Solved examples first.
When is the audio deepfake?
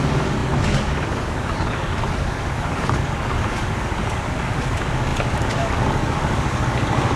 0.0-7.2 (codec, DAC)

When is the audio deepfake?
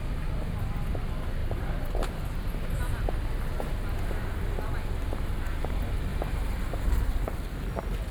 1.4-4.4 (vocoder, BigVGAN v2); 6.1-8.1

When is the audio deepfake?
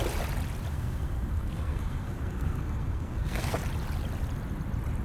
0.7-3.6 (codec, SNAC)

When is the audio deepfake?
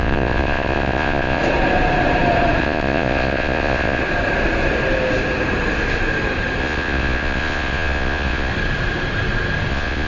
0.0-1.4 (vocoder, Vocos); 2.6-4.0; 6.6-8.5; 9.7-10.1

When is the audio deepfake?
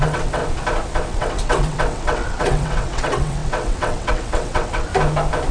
0.0-0.4 (vocoder, WaveNeXt); 1.1-4.9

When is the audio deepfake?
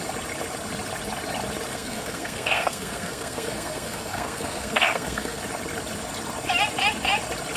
1.7-5.4 (codec, SNAC)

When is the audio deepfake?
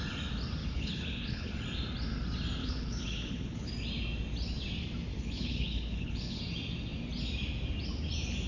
0.6-1.5 (codec, HILCodec); 2.6-3.7; 5.1-6.4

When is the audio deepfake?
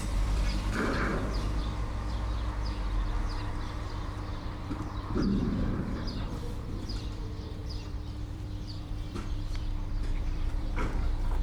0.0-1.1 (vocoder, BigVGAN v2); 3.5-11.4